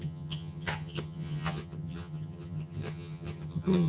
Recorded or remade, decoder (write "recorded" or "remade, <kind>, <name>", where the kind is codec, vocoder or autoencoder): remade, vocoder, HiFi-GAN